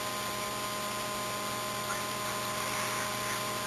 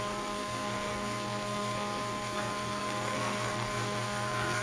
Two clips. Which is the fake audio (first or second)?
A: second